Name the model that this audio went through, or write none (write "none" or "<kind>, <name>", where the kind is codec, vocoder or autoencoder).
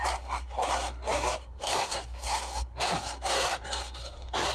codec, SNAC